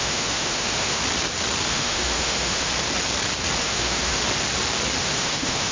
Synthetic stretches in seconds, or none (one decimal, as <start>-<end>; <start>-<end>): 0.0-1.0; 1.7-2.7; 3.6-4.2; 5.0-5.7